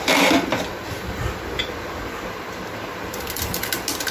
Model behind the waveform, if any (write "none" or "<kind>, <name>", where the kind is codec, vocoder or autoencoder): none